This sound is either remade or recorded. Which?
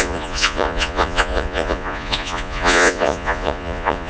remade